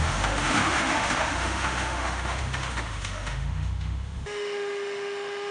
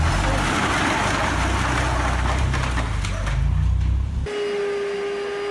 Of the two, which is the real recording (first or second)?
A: second